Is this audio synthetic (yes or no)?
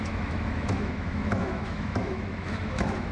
yes